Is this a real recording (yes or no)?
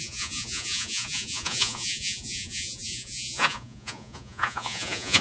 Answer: no